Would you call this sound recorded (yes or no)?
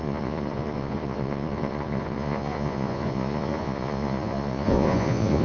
no